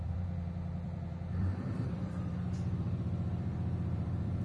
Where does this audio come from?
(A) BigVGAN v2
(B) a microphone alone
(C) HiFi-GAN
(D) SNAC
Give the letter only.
A